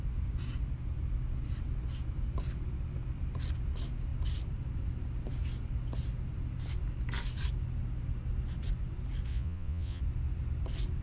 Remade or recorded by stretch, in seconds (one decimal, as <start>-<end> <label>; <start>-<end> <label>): 0.0-9.3 recorded; 9.3-10.0 remade; 10.0-11.0 recorded